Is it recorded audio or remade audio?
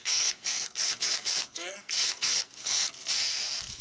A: remade